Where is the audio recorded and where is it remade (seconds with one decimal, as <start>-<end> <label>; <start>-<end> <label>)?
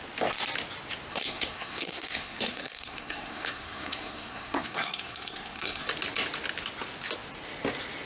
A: 0.0-1.1 recorded; 1.1-5.9 remade; 5.9-8.1 recorded